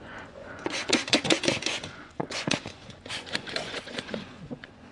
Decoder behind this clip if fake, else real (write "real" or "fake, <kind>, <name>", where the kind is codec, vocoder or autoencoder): fake, vocoder, Vocos